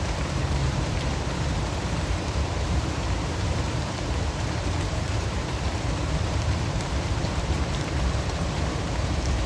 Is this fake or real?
fake